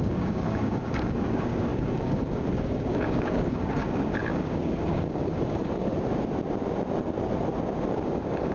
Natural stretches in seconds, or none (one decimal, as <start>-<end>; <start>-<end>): 5.9-8.0